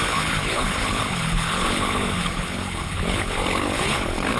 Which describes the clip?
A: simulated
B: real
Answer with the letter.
A